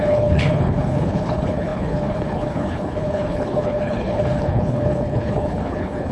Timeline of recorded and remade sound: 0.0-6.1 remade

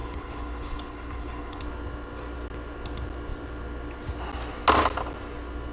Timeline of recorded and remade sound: 0.0-1.6 remade; 1.6-5.7 recorded